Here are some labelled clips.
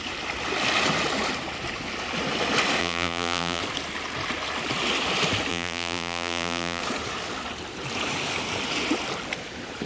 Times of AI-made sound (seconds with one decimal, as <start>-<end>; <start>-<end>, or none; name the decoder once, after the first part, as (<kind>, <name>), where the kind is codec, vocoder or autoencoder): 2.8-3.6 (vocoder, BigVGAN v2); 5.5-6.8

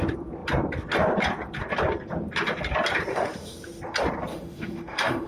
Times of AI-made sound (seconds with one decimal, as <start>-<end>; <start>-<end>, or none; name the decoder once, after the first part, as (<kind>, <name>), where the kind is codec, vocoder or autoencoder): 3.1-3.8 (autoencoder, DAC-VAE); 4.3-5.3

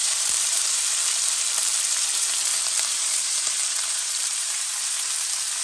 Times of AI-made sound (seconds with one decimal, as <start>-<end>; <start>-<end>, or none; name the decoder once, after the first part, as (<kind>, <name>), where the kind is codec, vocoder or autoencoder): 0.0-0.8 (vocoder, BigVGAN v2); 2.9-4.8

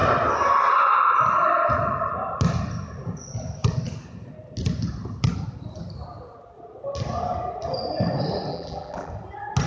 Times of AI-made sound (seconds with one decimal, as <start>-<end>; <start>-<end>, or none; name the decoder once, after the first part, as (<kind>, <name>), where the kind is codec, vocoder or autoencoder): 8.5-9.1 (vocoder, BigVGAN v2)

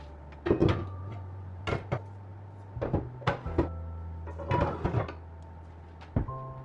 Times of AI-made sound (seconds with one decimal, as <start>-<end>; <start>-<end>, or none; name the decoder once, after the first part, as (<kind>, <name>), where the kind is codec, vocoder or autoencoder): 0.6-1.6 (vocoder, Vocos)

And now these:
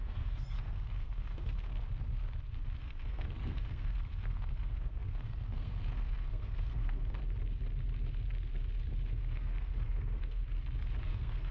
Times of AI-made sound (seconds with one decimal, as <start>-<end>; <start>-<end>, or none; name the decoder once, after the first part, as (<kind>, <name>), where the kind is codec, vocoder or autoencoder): 0.0-1.7 (codec, SNAC); 2.8-7.2; 9.2-10.4; 11.1-11.5